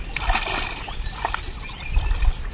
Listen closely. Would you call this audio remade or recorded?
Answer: recorded